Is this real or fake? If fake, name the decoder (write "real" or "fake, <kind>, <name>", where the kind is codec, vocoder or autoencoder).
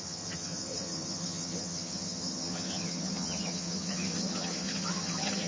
fake, vocoder, HiFi-GAN